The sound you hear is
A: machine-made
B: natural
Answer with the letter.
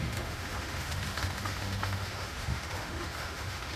A